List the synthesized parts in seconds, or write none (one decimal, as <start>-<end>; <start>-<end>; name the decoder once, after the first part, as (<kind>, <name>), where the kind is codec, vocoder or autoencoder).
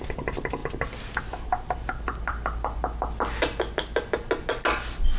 none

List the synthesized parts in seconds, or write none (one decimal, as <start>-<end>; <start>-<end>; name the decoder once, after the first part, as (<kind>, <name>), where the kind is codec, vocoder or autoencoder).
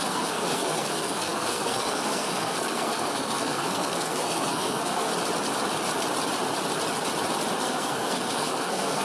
0.0-5.1 (codec, SNAC); 7.6-9.0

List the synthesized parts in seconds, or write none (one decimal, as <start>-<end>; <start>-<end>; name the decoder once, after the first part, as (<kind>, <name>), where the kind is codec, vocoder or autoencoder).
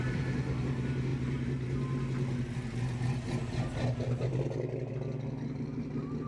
none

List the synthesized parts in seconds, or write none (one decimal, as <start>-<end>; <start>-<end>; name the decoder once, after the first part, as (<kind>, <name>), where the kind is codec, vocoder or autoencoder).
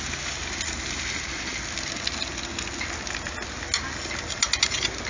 none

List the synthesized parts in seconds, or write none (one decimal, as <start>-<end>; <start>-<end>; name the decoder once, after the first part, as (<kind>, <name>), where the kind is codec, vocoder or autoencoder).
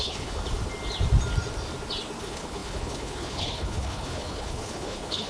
0.0-0.4 (codec, HILCodec); 2.2-5.3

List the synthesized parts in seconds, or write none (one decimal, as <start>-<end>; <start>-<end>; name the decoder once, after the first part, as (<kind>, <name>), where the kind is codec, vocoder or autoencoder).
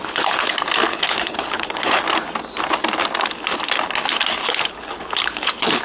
0.0-0.5 (codec, HILCodec); 0.9-2.0; 4.4-5.8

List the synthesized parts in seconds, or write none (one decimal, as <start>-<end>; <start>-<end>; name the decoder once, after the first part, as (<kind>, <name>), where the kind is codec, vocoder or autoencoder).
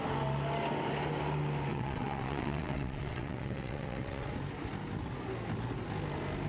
1.7-4.3 (vocoder, WaveNeXt)